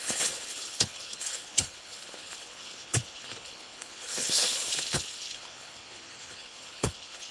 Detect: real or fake fake